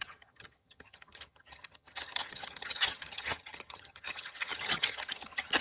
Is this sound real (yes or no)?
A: no